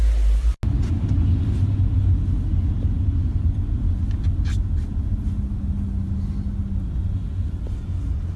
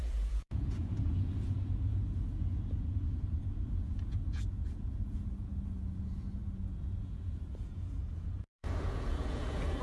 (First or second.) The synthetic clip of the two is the second